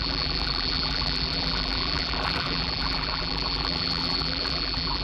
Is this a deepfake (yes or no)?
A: yes